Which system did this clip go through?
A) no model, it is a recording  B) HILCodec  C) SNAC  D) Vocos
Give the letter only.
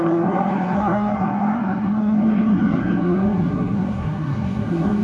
C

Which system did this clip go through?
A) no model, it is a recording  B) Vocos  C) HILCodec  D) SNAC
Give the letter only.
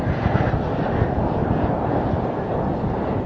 A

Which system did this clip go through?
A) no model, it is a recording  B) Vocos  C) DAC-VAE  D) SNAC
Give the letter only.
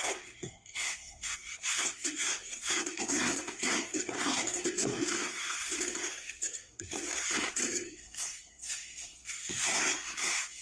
D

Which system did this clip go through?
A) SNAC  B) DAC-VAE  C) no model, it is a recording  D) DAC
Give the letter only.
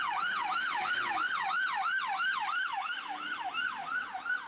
C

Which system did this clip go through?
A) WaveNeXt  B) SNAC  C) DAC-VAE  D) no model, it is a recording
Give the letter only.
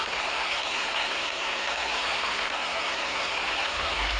B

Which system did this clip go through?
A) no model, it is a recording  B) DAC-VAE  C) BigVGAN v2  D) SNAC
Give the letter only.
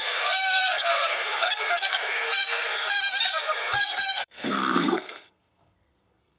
D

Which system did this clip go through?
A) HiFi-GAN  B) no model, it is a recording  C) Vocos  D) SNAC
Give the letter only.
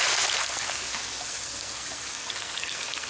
D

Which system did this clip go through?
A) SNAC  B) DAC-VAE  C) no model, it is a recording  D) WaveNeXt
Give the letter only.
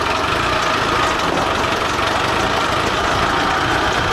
C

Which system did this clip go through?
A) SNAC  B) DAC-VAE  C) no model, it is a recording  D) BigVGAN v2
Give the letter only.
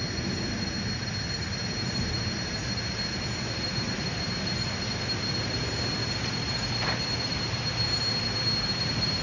C